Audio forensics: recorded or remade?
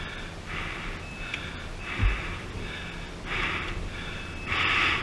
recorded